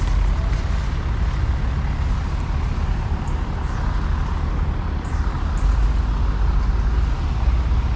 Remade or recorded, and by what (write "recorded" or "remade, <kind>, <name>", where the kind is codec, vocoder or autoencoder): recorded